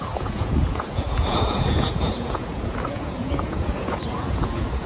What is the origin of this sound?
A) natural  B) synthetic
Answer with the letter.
B